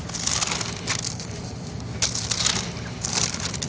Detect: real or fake real